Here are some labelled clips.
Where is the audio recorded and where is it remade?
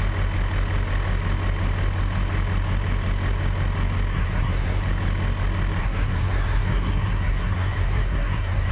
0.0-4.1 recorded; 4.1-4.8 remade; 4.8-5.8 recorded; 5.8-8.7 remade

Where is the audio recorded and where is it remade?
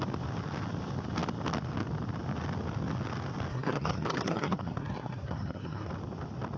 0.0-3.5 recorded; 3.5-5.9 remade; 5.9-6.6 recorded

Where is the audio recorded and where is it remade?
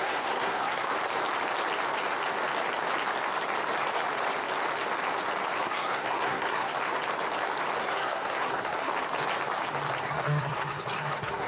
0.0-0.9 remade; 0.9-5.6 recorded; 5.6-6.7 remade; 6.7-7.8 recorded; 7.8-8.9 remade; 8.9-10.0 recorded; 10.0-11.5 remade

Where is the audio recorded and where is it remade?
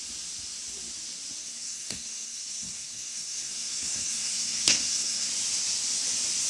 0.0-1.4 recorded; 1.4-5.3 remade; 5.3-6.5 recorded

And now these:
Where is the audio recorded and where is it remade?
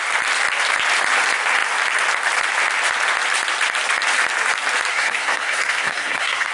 0.0-4.9 recorded; 4.9-6.5 remade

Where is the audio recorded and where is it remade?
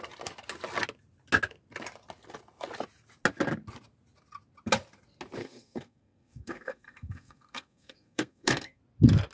0.0-5.4 recorded; 5.4-8.8 remade; 8.8-9.3 recorded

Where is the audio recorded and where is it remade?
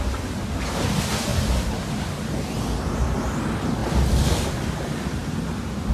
0.0-5.9 recorded